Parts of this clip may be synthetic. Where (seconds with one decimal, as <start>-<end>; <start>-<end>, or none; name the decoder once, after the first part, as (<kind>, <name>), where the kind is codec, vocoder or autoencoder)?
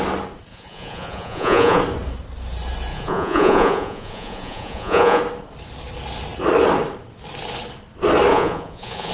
0.5-1.8 (vocoder, Vocos); 2.9-5.2; 8.3-9.1